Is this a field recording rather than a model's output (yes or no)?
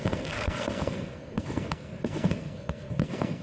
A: no